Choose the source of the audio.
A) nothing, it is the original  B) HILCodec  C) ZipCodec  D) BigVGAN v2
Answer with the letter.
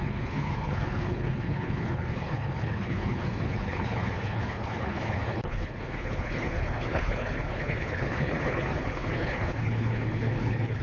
B